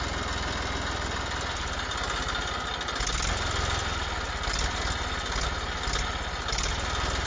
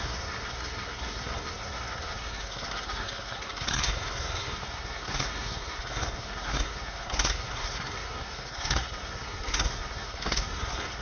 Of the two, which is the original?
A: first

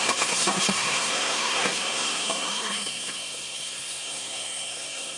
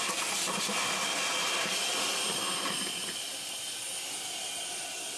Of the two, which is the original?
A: second